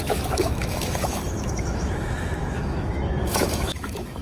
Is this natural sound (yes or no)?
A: no